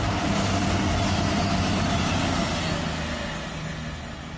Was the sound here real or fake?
real